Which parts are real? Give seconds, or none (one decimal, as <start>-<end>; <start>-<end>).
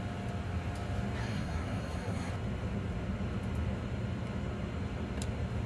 0.0-1.2; 2.3-5.7